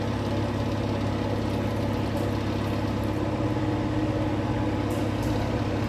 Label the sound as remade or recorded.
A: recorded